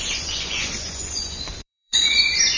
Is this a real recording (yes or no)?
no